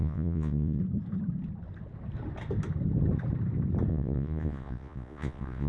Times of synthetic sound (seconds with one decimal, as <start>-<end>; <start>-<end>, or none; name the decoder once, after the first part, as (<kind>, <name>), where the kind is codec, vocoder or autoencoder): 0.0-0.8 (vocoder, Vocos); 3.9-5.7